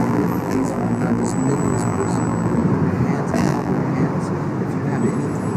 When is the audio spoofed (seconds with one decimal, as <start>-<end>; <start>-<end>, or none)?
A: 0.0-2.6; 3.3-3.8